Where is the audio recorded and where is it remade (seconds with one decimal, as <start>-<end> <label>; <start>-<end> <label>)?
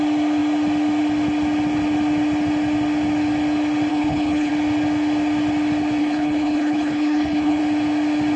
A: 0.0-3.9 recorded; 3.9-4.5 remade; 4.5-6.0 recorded; 6.0-7.6 remade; 7.6-8.4 recorded